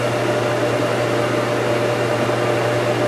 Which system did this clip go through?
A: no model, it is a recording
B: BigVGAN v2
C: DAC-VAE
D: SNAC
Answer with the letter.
A